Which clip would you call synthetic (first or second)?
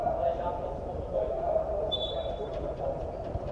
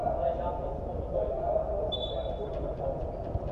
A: first